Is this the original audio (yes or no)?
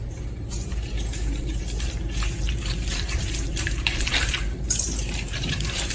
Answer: no